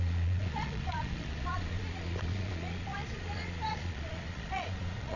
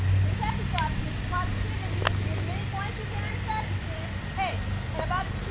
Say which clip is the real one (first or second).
second